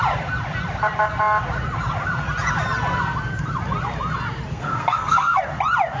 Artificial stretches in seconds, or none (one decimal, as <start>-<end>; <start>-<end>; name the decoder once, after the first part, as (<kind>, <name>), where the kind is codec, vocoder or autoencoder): 4.5-5.4 (codec, SNAC)